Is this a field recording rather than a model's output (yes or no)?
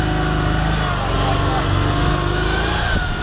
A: yes